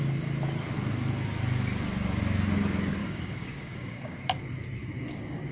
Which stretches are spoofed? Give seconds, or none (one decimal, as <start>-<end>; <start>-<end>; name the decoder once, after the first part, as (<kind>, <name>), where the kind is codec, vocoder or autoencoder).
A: 3.0-4.2 (codec, DAC); 4.8-5.5